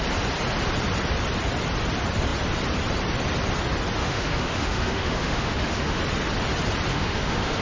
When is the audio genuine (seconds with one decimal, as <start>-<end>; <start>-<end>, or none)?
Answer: 0.0-4.0; 6.0-6.9